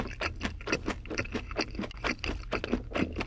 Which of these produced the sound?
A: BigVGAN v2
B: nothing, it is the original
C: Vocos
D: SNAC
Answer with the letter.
B